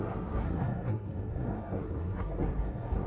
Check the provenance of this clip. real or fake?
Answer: fake